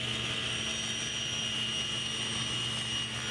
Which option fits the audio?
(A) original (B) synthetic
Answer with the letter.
A